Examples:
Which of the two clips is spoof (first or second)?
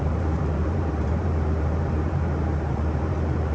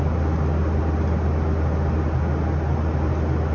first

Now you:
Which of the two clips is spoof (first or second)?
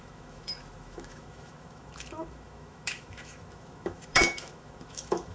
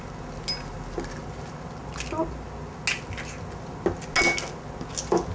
first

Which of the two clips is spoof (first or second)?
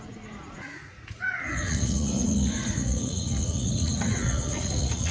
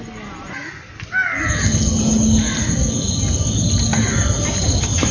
first